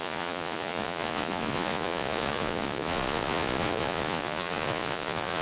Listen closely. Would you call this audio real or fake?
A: fake